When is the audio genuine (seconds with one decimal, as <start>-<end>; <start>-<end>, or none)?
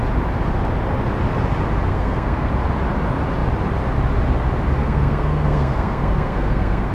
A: 0.0-1.9; 2.5-4.8